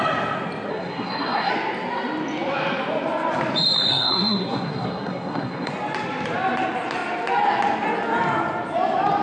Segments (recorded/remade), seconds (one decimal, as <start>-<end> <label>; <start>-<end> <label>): 0.0-0.7 recorded; 0.7-1.5 remade; 1.5-3.9 recorded; 3.9-5.7 remade; 5.7-9.2 recorded